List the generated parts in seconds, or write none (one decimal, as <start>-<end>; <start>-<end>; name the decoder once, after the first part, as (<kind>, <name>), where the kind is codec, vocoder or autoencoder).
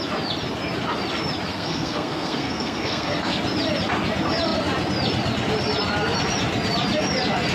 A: 1.5-3.4 (codec, SNAC)